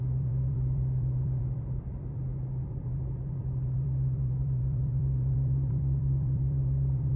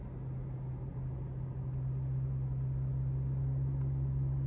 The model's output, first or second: first